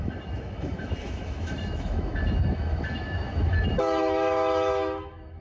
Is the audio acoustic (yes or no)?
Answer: no